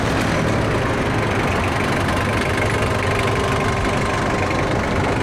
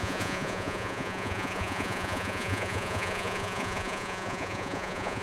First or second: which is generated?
second